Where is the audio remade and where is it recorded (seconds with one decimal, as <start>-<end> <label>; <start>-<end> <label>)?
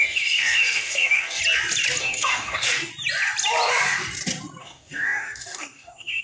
0.0-1.4 remade; 1.4-2.0 recorded; 2.0-2.9 remade; 2.9-4.6 recorded; 4.6-6.2 remade